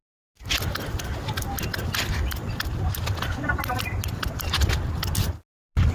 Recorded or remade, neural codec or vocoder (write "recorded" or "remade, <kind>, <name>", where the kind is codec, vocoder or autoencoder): recorded